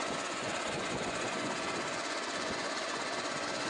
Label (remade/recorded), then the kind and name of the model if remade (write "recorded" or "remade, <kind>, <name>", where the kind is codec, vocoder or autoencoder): remade, vocoder, Vocos